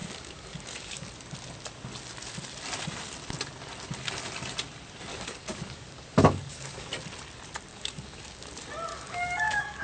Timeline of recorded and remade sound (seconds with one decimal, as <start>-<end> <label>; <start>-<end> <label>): 0.0-1.1 remade; 1.1-5.1 recorded; 5.1-6.9 remade; 6.9-7.7 recorded; 7.7-8.5 remade; 8.5-8.9 recorded; 8.9-9.8 remade